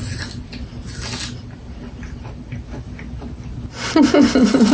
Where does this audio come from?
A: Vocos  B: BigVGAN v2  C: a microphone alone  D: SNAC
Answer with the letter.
C